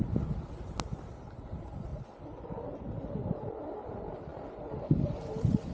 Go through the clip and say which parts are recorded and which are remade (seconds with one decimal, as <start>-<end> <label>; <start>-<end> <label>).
0.0-1.9 remade; 1.9-3.5 recorded; 3.5-4.3 remade; 4.3-5.2 recorded; 5.2-5.7 remade